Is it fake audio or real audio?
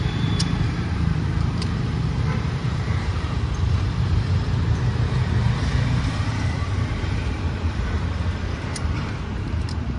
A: fake